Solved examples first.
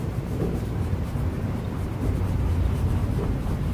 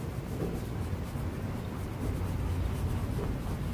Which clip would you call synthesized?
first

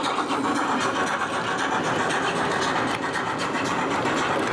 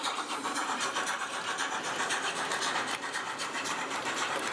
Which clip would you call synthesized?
second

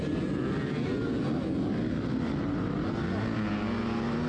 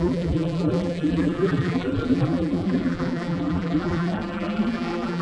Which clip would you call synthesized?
second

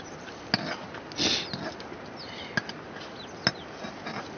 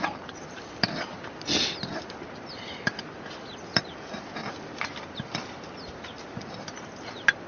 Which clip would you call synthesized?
second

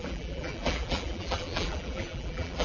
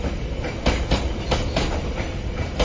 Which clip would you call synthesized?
first